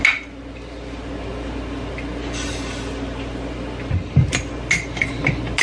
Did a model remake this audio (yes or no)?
no